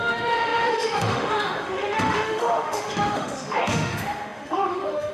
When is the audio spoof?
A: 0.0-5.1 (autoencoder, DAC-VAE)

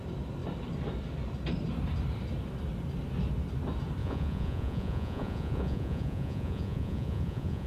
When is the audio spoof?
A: 4.0-7.7 (vocoder, Vocos)

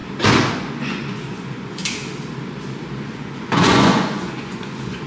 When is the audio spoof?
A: 0.5-1.8 (vocoder, Vocos); 3.0-5.1

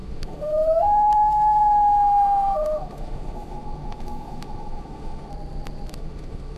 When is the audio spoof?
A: 0.0-5.3 (autoencoder, DAC-VAE); 5.9-6.6

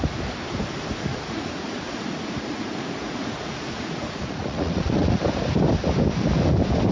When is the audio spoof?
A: 1.1-5.2 (vocoder, Vocos)

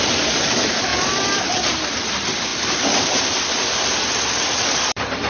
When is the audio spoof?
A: 0.0-5.3 (vocoder, BigVGAN v2)